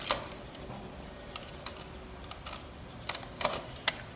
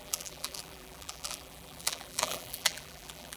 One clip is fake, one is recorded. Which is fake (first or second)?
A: second